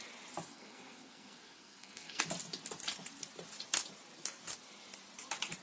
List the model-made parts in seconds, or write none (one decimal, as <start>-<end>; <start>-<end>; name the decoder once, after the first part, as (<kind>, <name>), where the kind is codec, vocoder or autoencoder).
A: 0.5-2.2 (codec, SNAC)